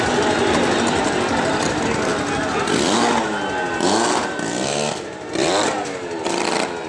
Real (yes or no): yes